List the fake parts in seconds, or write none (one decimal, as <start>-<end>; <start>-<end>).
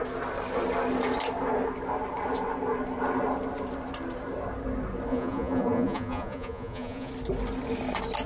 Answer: 5.1-7.1